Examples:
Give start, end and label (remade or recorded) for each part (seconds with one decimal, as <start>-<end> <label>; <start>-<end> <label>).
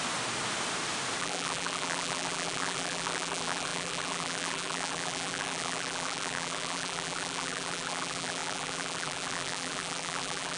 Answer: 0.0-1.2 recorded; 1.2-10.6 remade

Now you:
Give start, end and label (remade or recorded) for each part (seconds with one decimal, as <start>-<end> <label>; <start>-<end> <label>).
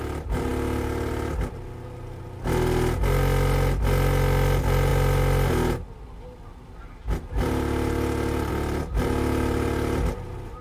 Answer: 0.0-10.6 recorded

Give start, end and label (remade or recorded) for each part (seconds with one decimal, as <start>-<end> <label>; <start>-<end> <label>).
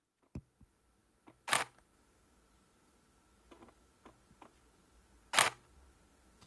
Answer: 0.0-6.5 recorded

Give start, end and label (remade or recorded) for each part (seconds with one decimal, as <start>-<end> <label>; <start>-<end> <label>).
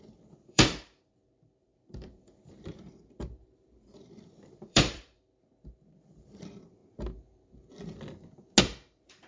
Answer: 0.0-6.8 remade; 6.8-8.6 recorded; 8.6-9.3 remade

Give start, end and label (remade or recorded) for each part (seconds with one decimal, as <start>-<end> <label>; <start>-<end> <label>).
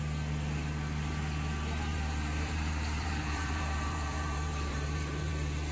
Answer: 0.0-1.9 recorded; 1.9-5.3 remade; 5.3-5.7 recorded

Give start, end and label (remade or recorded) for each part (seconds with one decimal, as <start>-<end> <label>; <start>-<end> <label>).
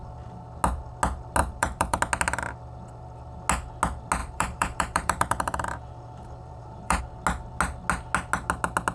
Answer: 0.0-1.4 recorded; 1.4-2.0 remade; 2.0-4.2 recorded; 4.2-7.0 remade; 7.0-8.9 recorded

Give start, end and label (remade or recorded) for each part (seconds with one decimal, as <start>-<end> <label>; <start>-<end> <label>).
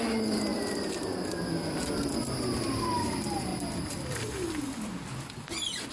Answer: 0.0-3.5 recorded; 3.5-4.6 remade; 4.6-5.0 recorded; 5.0-5.9 remade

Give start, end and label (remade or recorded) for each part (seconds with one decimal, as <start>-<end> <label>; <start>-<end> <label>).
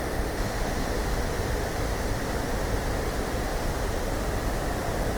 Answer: 0.0-3.5 recorded; 3.5-4.7 remade; 4.7-5.2 recorded